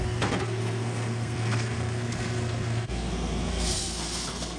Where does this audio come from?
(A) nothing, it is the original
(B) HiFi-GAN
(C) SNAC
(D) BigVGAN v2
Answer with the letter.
C